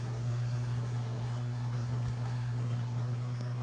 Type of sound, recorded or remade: remade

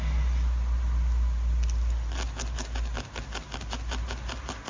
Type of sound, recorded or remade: recorded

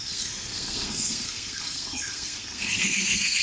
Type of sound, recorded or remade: remade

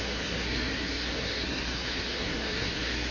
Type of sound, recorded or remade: remade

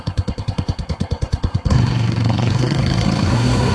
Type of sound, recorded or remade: remade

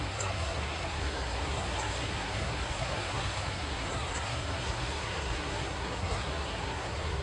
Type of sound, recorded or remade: remade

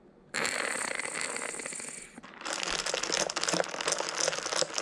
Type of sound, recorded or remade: recorded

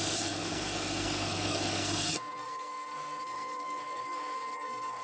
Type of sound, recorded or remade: remade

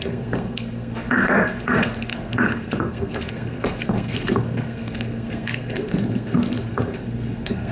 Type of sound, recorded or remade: remade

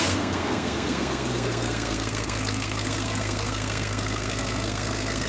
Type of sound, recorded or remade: remade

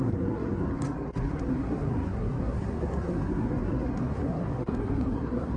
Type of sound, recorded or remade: remade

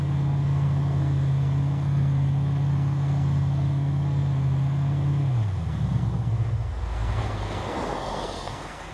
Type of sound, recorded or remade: remade